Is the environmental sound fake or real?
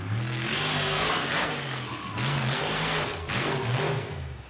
fake